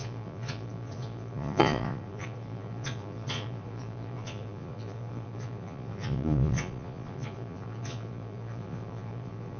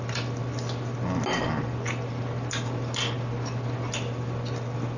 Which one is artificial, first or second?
first